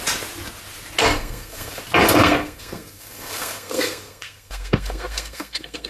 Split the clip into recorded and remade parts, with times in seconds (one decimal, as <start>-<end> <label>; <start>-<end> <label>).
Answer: 0.0-1.0 recorded; 1.0-1.8 remade; 1.8-2.2 recorded; 2.2-5.9 remade